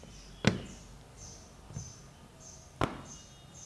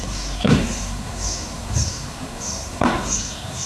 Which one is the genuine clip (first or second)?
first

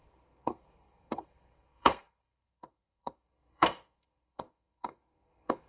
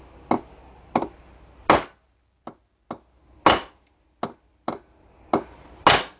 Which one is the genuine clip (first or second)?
second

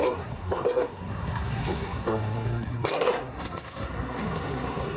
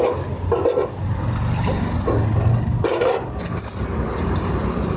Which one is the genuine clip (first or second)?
second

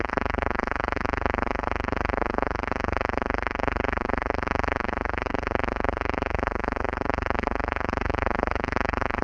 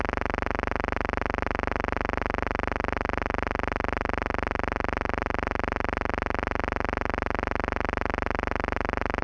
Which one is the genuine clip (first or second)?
second